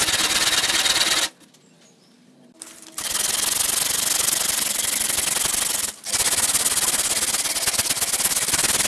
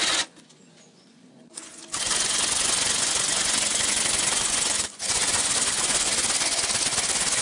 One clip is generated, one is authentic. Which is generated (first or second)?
second